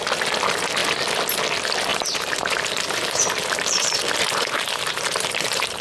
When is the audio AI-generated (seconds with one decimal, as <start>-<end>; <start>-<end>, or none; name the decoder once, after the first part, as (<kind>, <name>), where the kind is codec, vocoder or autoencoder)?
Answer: 1.9-5.8 (vocoder, BigVGAN v2)